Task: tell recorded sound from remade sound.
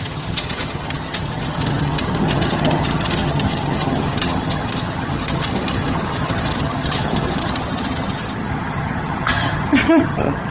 remade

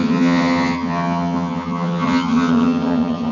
remade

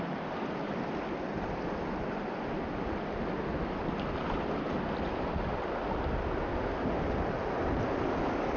recorded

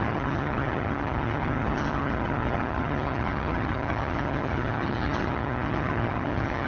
remade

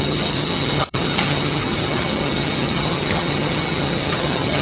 remade